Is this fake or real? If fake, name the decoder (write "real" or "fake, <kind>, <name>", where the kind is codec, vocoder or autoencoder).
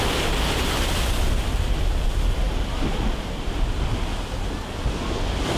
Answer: real